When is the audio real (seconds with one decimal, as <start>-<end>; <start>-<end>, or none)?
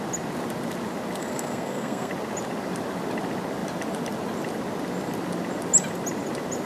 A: 0.0-1.2; 2.1-6.7